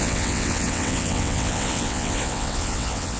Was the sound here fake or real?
fake